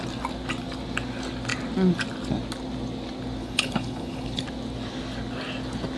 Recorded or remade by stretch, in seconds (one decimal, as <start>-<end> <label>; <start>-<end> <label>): 0.0-3.4 recorded; 3.4-4.4 remade; 4.4-6.0 recorded